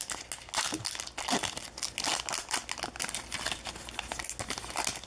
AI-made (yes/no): no